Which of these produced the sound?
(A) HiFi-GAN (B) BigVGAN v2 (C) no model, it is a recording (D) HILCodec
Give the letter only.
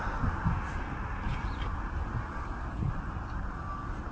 C